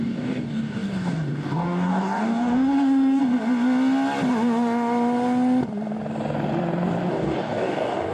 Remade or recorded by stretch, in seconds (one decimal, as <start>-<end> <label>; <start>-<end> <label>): 0.0-3.2 remade; 3.2-7.1 recorded; 7.1-8.1 remade